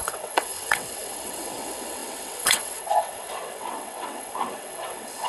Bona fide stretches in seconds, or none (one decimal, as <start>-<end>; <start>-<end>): none

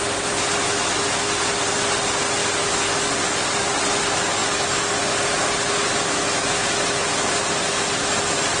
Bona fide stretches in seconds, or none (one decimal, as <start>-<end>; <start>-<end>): 0.0-8.6

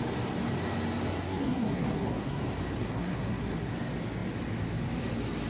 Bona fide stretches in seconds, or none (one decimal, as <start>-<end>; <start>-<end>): 0.0-1.1; 2.4-2.8; 3.7-5.5